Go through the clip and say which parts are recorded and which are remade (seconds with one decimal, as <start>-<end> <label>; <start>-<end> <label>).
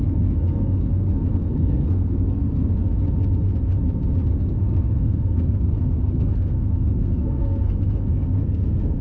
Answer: 0.0-2.6 remade; 2.6-4.3 recorded; 4.3-9.0 remade